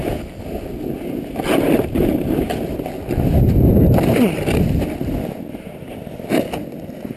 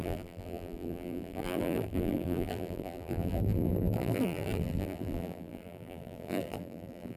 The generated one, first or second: second